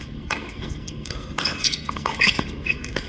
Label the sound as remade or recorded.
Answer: remade